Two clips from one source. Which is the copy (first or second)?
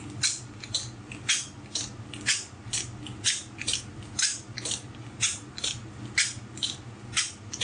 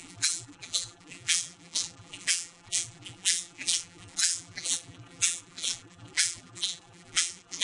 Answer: second